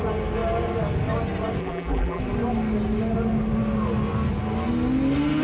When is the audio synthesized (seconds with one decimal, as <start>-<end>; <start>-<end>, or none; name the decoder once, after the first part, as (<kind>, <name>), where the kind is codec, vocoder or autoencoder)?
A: 1.6-2.2 (vocoder, BigVGAN v2)